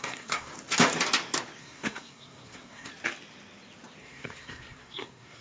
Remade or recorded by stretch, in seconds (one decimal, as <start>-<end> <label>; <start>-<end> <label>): 0.0-0.5 remade; 0.5-1.6 recorded; 1.6-2.9 remade; 2.9-4.0 recorded; 4.0-5.4 remade

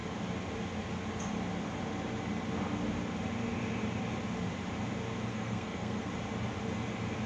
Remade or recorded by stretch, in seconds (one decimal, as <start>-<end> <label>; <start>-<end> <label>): 0.0-5.3 recorded; 5.3-6.1 remade; 6.1-7.3 recorded

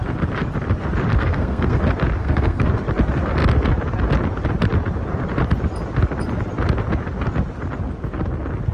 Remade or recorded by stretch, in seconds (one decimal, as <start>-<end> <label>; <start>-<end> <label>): 0.0-1.1 recorded; 1.1-1.8 remade; 1.8-2.2 recorded; 2.2-2.7 remade; 2.7-8.7 recorded

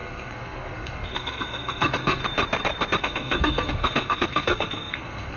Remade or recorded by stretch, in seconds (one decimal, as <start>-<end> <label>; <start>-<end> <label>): 0.0-2.2 remade; 2.2-3.0 recorded; 3.0-5.4 remade

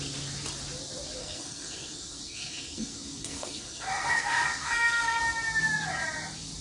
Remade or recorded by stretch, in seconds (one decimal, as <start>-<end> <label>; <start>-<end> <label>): 0.0-1.2 recorded; 1.2-5.2 remade; 5.2-6.6 recorded

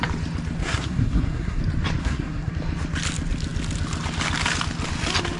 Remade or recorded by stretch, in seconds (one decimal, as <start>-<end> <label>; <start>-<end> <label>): 0.0-0.6 recorded; 0.6-1.6 remade; 1.6-2.0 recorded; 2.0-2.5 remade; 2.5-5.4 recorded